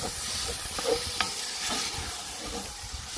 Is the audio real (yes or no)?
yes